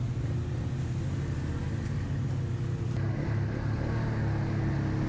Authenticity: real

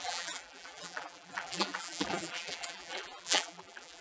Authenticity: fake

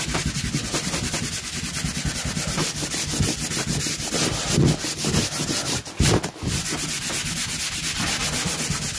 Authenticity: real